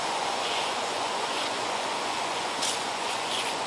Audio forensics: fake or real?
fake